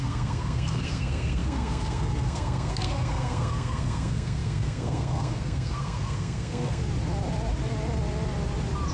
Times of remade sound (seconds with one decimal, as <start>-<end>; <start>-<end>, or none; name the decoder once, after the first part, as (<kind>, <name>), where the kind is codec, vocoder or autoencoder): 0.0-6.8 (codec, SNAC)